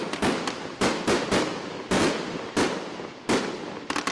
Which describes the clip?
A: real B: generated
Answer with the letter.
A